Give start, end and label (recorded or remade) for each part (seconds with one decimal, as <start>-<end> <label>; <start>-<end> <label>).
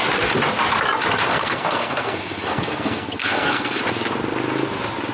0.0-1.3 recorded; 1.3-3.8 remade; 3.8-5.1 recorded